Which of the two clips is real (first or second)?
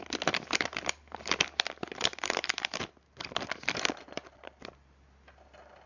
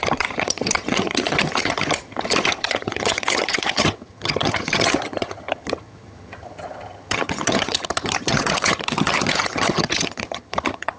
first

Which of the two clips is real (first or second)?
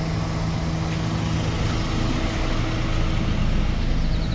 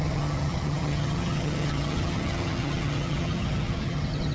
first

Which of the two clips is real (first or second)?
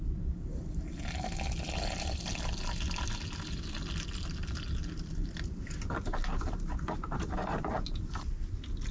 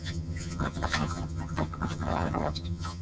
first